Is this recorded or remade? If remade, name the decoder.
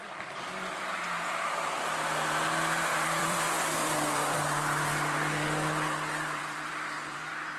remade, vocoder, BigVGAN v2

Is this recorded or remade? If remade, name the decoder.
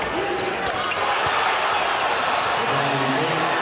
recorded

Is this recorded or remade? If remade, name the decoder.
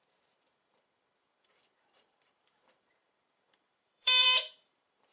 remade, vocoder, BigVGAN v2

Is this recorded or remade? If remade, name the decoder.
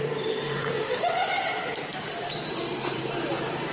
remade, vocoder, BigVGAN v2